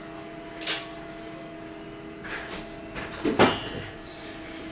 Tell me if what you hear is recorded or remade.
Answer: recorded